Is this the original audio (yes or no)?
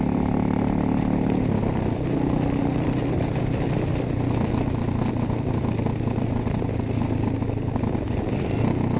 yes